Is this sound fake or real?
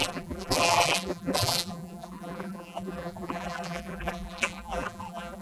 fake